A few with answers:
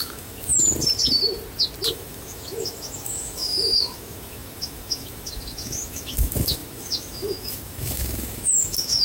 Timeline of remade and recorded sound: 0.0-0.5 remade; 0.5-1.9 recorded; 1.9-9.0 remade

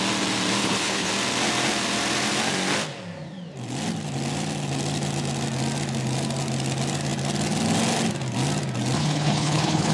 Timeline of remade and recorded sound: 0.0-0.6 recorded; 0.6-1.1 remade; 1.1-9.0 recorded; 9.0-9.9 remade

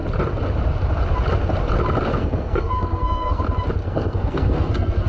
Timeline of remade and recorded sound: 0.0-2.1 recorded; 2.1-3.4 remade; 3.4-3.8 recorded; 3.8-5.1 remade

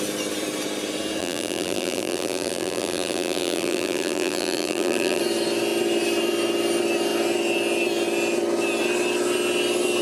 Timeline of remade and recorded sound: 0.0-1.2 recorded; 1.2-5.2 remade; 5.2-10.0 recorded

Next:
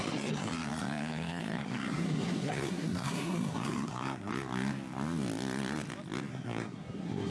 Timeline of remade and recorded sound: 0.0-4.3 remade; 4.3-6.3 recorded; 6.3-7.3 remade

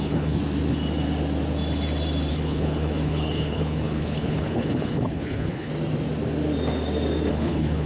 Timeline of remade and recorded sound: 0.0-0.4 remade; 0.4-2.3 recorded; 2.3-5.7 remade; 5.7-7.3 recorded; 7.3-7.9 remade

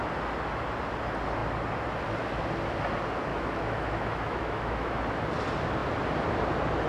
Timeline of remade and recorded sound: 0.0-3.3 recorded; 3.3-5.0 remade; 5.0-6.9 recorded

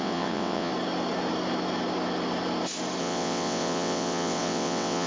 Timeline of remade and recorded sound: 0.0-0.7 remade; 0.7-3.0 recorded; 3.0-5.1 remade